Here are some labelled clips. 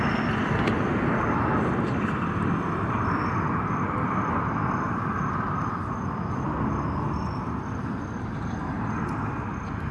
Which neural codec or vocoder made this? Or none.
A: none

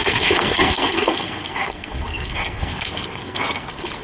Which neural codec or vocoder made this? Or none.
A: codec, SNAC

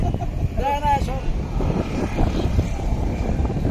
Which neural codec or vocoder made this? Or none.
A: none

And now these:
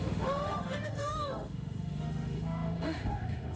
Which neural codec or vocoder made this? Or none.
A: autoencoder, DAC-VAE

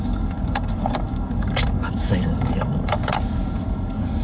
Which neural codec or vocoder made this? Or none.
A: codec, DAC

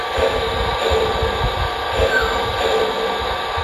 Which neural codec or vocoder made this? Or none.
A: none